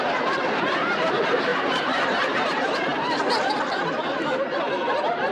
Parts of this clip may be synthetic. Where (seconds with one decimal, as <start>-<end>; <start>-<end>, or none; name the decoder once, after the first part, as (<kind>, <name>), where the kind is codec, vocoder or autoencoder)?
0.0-2.9 (vocoder, BigVGAN v2)